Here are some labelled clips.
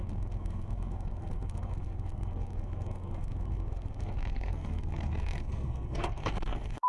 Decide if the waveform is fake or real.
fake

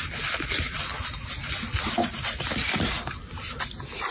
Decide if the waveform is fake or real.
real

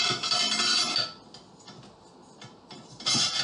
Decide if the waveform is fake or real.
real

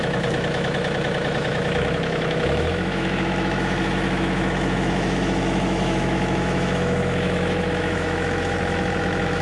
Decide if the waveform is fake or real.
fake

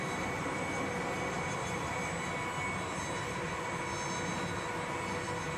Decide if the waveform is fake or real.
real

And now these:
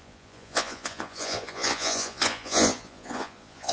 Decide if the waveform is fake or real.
fake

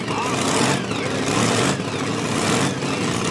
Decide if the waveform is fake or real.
real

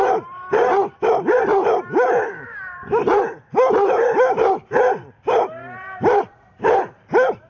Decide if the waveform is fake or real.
fake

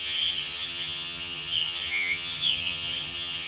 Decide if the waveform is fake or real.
fake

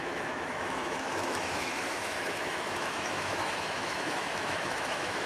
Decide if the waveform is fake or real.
fake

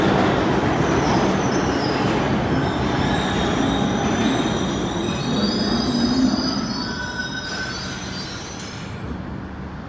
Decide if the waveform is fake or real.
real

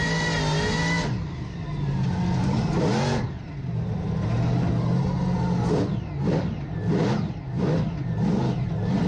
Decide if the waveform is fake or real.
real